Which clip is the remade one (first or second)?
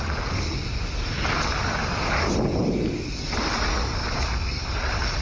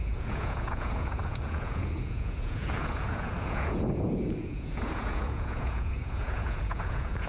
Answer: second